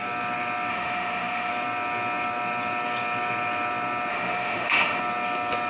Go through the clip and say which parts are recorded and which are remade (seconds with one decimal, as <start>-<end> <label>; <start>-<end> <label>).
0.0-0.7 recorded; 0.7-1.5 remade; 1.5-4.1 recorded; 4.1-5.0 remade; 5.0-5.7 recorded

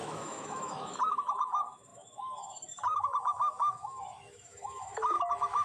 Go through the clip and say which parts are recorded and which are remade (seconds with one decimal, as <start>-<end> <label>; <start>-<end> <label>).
0.0-5.6 remade

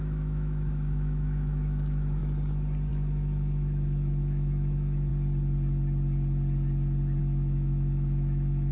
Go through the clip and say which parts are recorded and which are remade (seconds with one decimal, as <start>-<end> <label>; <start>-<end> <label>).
0.0-2.2 remade; 2.2-2.9 recorded; 2.9-5.1 remade; 5.1-7.2 recorded; 7.2-8.7 remade

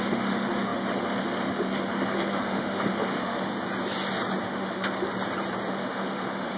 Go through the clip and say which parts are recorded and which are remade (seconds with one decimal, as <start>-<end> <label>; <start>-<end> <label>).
0.0-3.5 remade; 3.5-4.4 recorded; 4.4-5.1 remade; 5.1-5.7 recorded; 5.7-6.6 remade

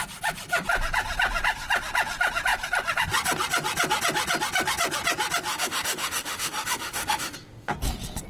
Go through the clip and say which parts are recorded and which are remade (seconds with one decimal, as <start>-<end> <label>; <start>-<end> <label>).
0.0-5.5 recorded; 5.5-7.7 remade; 7.7-8.3 recorded

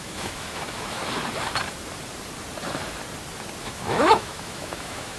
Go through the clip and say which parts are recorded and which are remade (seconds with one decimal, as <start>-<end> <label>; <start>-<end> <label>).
0.0-1.0 remade; 1.0-3.6 recorded; 3.6-5.2 remade

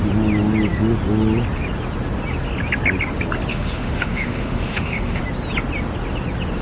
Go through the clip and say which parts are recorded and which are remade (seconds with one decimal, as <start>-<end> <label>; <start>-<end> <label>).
0.0-3.5 recorded; 3.5-5.2 remade; 5.2-6.6 recorded